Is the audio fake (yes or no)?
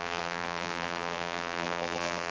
yes